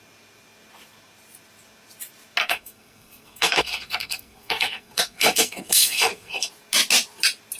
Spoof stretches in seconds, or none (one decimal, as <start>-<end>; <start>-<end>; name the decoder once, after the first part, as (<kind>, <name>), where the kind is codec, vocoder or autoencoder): 2.4-6.5 (codec, SNAC)